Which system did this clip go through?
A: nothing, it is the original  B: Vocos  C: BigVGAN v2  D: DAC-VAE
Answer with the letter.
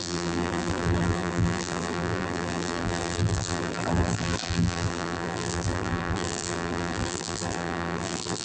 C